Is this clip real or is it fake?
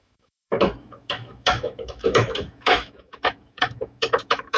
fake